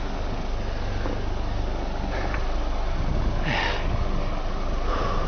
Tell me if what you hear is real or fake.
real